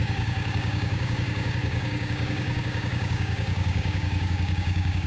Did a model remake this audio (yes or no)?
yes